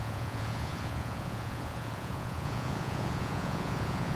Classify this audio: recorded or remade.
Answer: remade